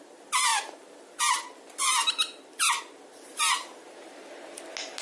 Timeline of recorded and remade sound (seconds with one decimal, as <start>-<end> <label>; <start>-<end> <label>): 0.0-5.0 recorded